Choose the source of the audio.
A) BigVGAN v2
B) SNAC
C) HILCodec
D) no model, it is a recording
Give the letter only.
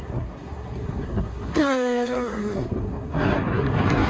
B